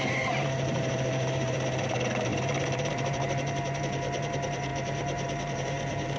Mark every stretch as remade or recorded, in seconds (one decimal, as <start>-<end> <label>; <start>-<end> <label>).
0.0-6.2 remade